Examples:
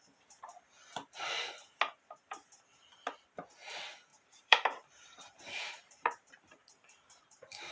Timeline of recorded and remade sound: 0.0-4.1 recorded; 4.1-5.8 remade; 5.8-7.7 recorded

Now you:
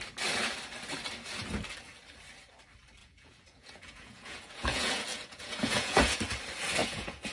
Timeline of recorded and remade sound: 0.0-3.0 recorded; 3.0-6.2 remade; 6.2-6.8 recorded; 6.8-7.3 remade